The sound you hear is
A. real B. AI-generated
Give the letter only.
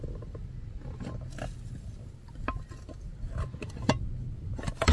A